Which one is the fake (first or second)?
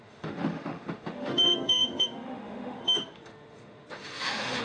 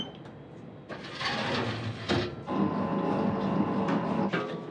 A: first